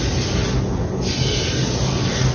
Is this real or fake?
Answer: real